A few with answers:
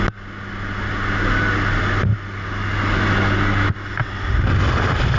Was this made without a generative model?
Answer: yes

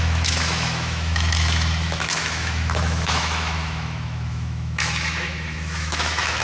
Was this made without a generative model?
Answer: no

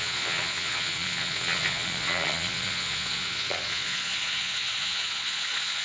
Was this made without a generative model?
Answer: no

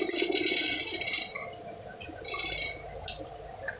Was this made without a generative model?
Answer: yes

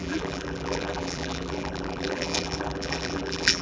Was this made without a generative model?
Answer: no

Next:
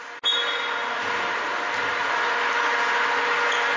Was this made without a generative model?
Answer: yes